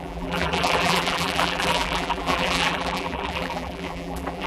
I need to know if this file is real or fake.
fake